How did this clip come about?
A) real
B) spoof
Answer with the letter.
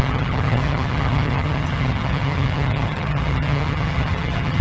B